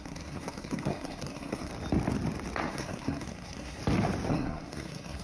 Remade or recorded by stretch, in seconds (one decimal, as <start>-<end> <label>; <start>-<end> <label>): 0.0-1.7 remade; 1.7-2.6 recorded; 2.6-3.8 remade; 3.8-4.3 recorded; 4.3-5.2 remade